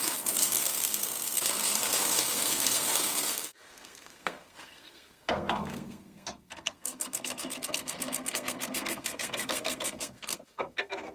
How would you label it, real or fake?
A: fake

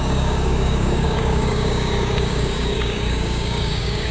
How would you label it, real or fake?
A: fake